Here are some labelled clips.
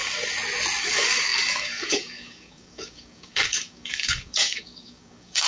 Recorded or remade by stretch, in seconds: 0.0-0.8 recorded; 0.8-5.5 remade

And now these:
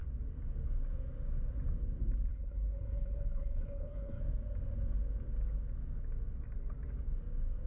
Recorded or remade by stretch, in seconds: 0.0-2.3 recorded; 2.3-4.2 remade; 4.2-7.7 recorded

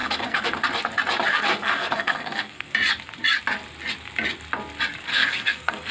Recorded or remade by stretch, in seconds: 0.0-0.6 remade; 0.6-1.3 recorded; 1.3-2.7 remade; 2.7-5.1 recorded; 5.1-5.9 remade